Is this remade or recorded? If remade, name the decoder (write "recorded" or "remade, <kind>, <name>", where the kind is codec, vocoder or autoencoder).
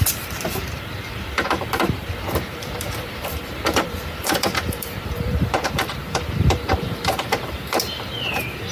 remade, vocoder, BigVGAN v2